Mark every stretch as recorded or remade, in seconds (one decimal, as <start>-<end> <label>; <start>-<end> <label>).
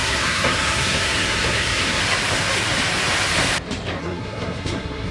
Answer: 0.0-2.0 remade; 2.0-4.0 recorded; 4.0-5.1 remade